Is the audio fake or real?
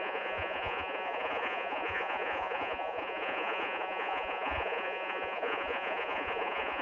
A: fake